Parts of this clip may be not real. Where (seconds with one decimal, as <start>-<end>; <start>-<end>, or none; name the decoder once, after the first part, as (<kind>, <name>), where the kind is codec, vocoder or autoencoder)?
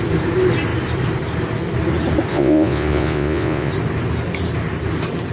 2.3-3.7 (vocoder, Vocos)